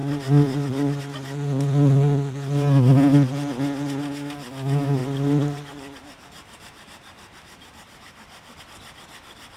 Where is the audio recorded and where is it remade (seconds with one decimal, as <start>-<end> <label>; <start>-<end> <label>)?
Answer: 0.0-5.0 recorded; 5.0-8.6 remade; 8.6-9.6 recorded